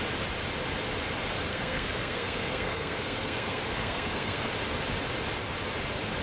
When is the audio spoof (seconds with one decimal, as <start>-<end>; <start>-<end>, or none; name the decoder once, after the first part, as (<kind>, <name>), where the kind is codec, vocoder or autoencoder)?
1.5-4.5 (codec, SNAC)